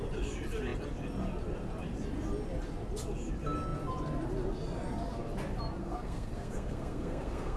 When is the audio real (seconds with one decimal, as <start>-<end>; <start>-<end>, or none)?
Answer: 0.0-5.8